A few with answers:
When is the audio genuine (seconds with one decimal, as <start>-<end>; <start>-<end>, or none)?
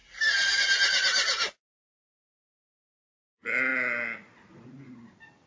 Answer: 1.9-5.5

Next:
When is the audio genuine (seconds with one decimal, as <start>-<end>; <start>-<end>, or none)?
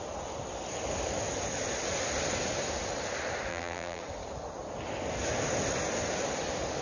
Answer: 0.0-3.5; 4.0-6.8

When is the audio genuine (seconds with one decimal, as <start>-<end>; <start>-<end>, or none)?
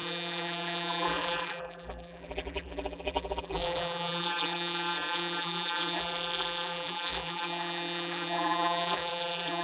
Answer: none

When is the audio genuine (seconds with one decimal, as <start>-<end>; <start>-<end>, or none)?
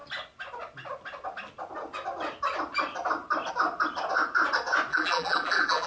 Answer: 0.0-4.9